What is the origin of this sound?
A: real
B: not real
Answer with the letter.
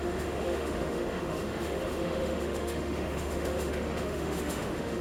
B